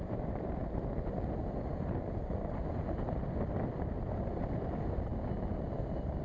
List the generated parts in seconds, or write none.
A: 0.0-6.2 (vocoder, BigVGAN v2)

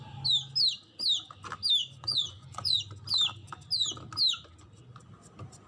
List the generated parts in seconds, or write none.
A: 1.8-2.8 (vocoder, Vocos)

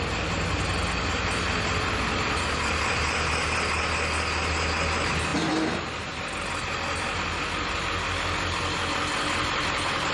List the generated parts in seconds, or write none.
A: none

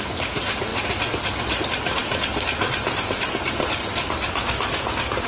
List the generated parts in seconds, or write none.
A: none

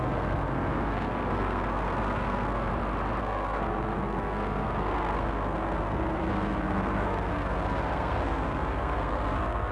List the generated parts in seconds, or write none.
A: 0.0-2.7 (codec, SNAC); 3.2-9.7